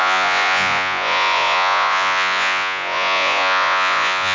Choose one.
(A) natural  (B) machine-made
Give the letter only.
B